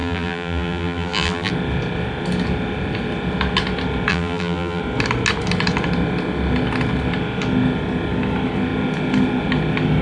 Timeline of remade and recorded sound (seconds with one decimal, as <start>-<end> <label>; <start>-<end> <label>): 0.0-1.5 remade; 1.5-4.1 recorded; 4.1-4.8 remade; 4.8-10.0 recorded